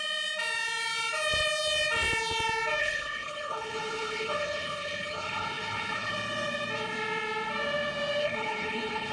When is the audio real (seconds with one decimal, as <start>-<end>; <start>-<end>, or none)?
0.0-2.8; 6.1-8.2